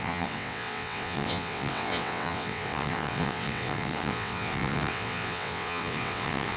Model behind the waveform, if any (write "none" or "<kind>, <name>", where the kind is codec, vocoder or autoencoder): vocoder, WaveNeXt